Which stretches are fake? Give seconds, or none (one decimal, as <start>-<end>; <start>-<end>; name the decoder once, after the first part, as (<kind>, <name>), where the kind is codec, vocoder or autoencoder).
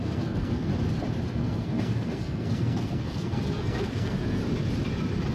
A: 0.0-0.7 (codec, SNAC); 1.3-4.4